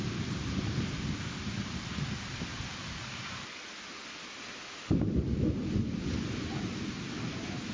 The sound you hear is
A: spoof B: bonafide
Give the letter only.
B